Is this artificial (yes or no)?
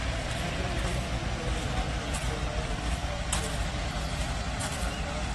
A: no